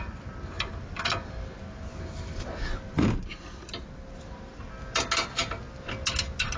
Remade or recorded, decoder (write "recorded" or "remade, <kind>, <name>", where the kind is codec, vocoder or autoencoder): recorded